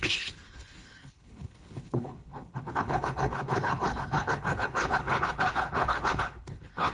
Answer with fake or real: fake